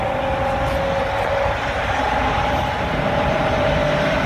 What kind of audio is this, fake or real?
real